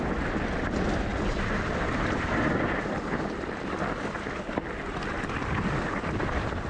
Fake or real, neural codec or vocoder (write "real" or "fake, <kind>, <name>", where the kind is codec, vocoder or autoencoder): real